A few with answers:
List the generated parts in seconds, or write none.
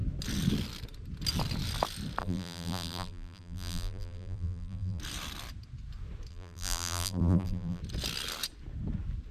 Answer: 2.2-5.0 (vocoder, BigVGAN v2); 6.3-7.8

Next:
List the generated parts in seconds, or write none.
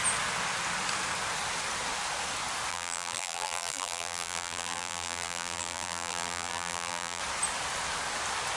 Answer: 2.7-7.2 (vocoder, BigVGAN v2)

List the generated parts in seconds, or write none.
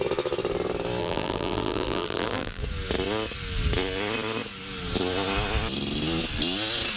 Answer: 1.0-2.6 (vocoder, BigVGAN v2)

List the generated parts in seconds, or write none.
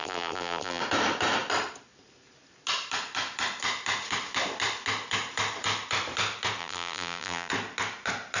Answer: 0.0-0.8 (vocoder, BigVGAN v2); 6.6-7.5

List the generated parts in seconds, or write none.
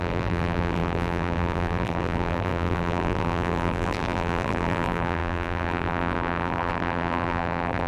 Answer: 0.0-7.9 (vocoder, BigVGAN v2)